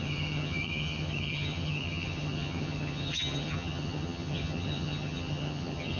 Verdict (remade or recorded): remade